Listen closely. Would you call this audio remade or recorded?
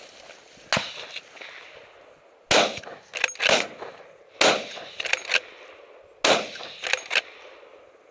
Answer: recorded